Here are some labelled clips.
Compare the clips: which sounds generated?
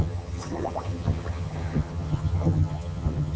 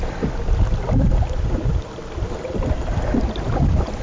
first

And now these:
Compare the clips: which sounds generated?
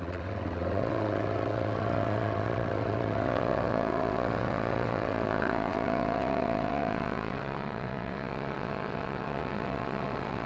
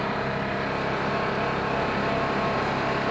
first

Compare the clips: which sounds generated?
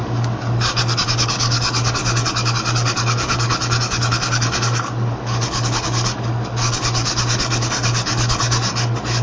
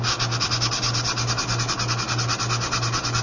first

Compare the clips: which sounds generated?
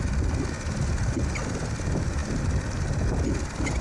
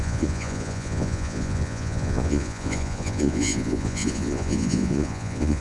second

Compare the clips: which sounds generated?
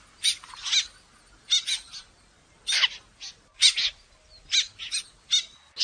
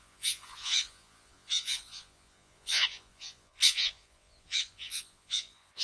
second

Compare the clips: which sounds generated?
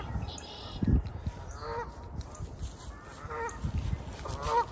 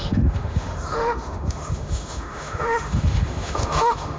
second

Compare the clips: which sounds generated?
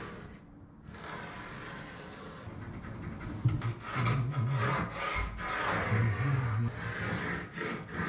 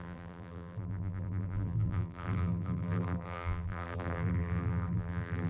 second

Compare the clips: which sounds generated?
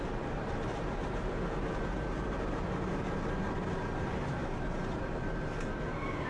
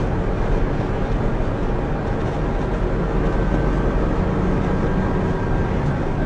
first